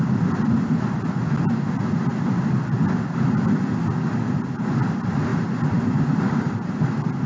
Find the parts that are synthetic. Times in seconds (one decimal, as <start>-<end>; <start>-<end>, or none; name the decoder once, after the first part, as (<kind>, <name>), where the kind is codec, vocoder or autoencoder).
0.0-7.3 (vocoder, BigVGAN v2)